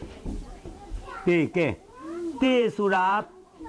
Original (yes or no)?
no